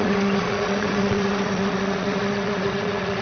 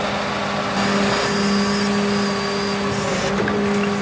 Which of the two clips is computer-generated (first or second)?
first